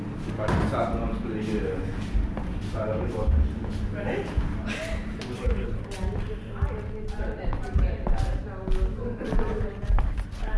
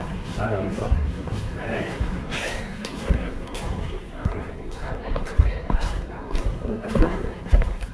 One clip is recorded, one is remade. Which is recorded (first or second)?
first